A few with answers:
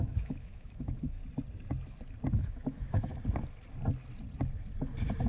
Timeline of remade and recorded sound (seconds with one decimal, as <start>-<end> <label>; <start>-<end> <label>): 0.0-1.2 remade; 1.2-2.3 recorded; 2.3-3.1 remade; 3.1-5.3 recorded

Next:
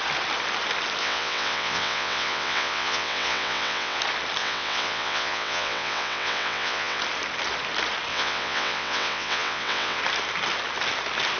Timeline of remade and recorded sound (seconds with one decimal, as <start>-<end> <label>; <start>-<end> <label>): 0.0-1.0 recorded; 1.0-4.0 remade; 4.0-4.4 recorded; 4.4-7.0 remade; 7.0-8.1 recorded; 8.1-10.0 remade; 10.0-11.4 recorded

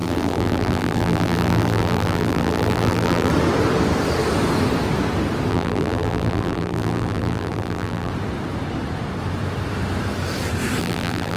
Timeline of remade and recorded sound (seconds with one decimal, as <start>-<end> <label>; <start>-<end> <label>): 0.0-3.3 remade; 3.3-5.5 recorded; 5.5-8.1 remade; 8.1-10.8 recorded; 10.8-11.4 remade